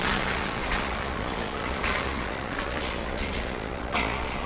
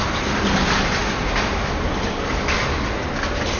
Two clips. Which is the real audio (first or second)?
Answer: second